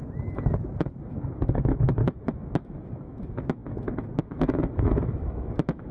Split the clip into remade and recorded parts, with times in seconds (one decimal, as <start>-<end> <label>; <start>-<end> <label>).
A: 0.0-0.8 recorded; 0.8-5.9 remade